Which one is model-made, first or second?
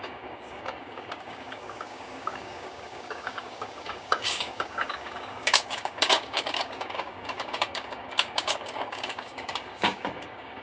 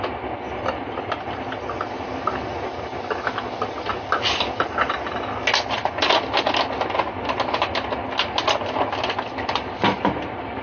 first